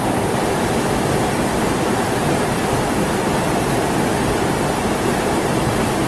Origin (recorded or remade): recorded